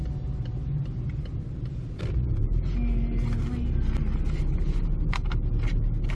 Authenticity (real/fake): real